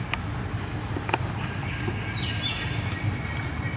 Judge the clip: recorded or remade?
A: recorded